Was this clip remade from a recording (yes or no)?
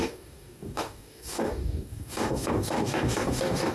yes